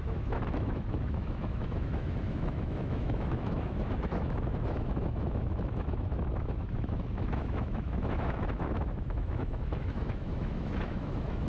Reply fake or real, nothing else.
fake